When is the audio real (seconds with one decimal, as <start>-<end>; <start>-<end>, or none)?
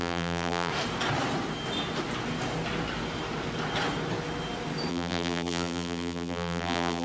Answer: 0.7-4.9